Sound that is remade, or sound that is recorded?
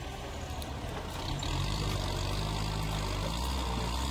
recorded